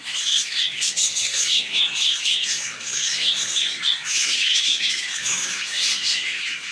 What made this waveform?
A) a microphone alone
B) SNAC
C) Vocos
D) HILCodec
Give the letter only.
B